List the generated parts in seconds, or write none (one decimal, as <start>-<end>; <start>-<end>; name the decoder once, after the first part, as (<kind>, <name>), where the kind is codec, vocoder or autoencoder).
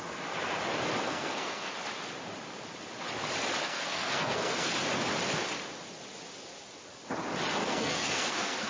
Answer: 1.0-1.7 (codec, SNAC); 3.6-4.7; 7.6-8.7